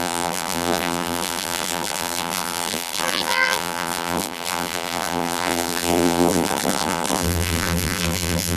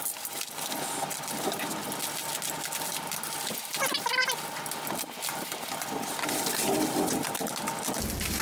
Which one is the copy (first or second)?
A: first